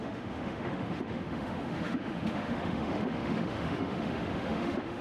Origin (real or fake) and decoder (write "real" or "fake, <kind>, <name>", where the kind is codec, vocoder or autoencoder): fake, autoencoder, DAC-VAE